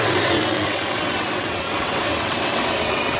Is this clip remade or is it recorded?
remade